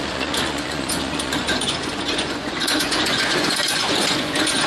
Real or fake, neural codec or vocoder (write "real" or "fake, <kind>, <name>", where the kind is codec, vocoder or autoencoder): fake, vocoder, Vocos